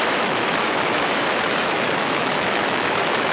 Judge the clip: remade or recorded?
remade